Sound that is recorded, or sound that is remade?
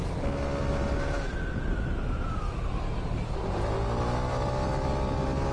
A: recorded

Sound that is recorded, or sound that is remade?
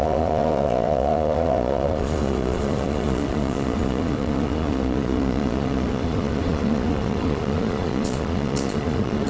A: remade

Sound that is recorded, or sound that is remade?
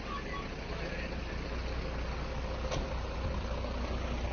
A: recorded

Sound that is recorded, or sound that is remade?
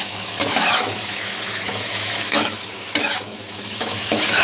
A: remade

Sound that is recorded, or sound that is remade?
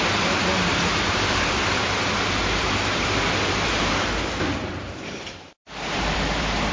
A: remade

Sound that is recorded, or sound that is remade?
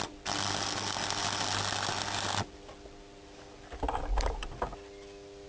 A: recorded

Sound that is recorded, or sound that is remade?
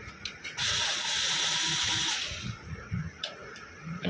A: remade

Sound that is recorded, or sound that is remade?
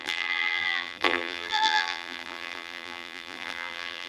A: remade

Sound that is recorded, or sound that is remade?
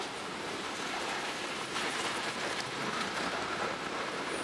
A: remade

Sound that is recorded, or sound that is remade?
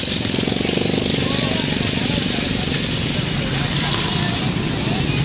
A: recorded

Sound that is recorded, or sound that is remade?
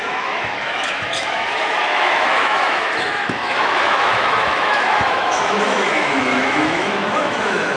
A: remade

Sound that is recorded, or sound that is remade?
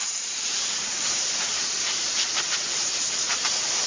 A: remade